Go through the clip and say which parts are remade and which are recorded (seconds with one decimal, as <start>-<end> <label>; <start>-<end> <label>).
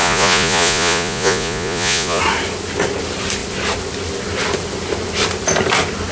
0.0-2.2 remade; 2.2-6.1 recorded